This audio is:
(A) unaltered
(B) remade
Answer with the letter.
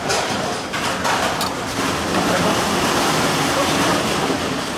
A